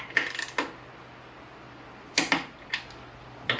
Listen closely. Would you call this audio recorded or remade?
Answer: recorded